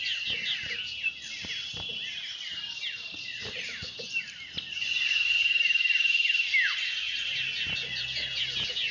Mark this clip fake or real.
real